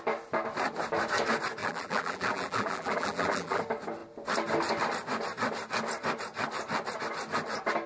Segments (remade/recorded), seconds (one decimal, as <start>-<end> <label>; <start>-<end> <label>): 0.0-1.6 recorded; 1.6-3.6 remade; 3.6-7.9 recorded